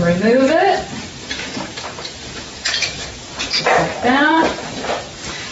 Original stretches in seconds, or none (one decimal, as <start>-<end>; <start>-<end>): 0.0-1.2; 3.6-4.4; 5.0-5.5